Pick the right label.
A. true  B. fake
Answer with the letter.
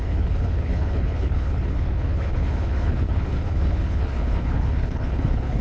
B